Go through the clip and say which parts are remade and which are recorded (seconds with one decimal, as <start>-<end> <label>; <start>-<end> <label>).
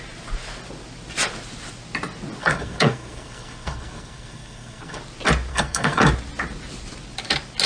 0.0-2.4 recorded; 2.4-5.0 remade; 5.0-5.5 recorded; 5.5-6.1 remade; 6.1-7.7 recorded